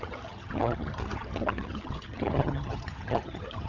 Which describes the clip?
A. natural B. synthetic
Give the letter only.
B